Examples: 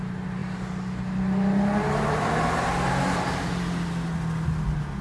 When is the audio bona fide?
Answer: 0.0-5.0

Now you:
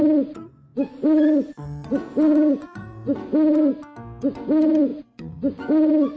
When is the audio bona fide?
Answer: 3.7-4.2